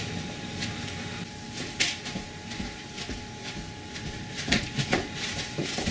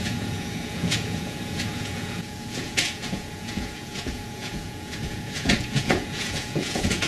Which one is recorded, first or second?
first